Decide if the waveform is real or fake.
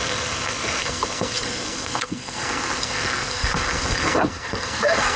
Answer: fake